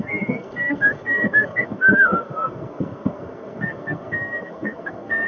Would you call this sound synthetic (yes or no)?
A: yes